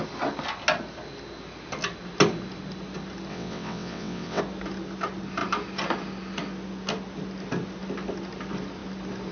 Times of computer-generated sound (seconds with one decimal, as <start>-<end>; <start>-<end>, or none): 3.3-4.4